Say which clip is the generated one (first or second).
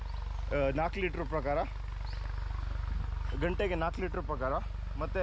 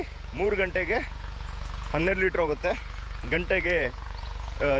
second